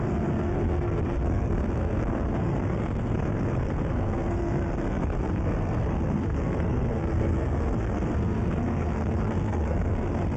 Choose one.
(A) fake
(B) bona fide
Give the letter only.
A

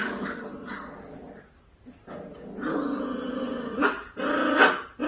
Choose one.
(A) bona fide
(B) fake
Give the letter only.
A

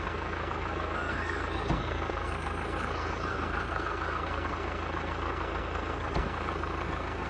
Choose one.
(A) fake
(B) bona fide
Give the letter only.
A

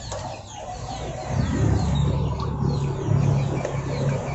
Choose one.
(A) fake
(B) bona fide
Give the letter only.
B